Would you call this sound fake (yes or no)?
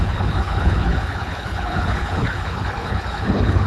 yes